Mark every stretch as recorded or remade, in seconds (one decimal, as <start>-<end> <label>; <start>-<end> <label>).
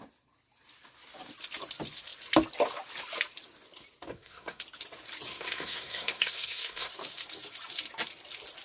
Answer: 0.0-4.1 recorded; 4.1-4.6 remade; 4.6-5.3 recorded; 5.3-6.9 remade; 6.9-8.6 recorded